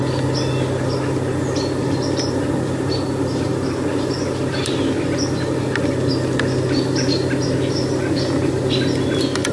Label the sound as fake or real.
real